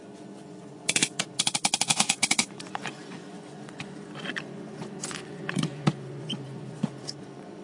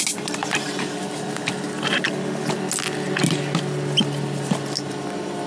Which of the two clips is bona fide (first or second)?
second